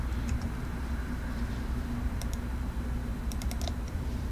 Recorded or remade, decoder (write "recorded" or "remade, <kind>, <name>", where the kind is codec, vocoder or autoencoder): remade, vocoder, BigVGAN v2